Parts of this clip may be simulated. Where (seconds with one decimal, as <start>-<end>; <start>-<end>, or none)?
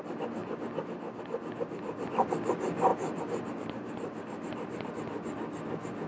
2.9-4.9